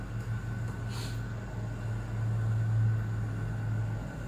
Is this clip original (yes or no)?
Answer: yes